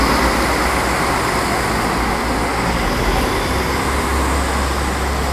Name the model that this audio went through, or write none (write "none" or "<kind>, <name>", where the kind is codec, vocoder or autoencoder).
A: none